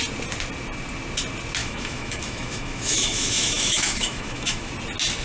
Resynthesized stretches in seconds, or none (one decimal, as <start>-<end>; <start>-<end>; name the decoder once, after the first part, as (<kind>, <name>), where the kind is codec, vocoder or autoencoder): 1.6-4.7 (autoencoder, DAC-VAE)